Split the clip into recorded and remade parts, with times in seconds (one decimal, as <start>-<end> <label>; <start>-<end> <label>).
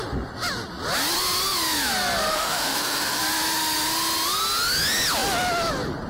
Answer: 0.0-2.3 recorded; 2.3-3.2 remade; 3.2-6.1 recorded